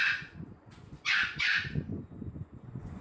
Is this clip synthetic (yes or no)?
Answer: yes